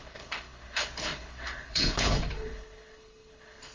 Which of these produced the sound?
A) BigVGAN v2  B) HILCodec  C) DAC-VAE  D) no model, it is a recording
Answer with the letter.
B